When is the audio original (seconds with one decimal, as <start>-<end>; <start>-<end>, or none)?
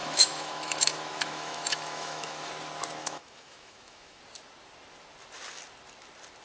2.5-3.0; 4.2-6.4